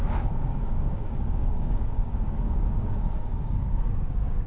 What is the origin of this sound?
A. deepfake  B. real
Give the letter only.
A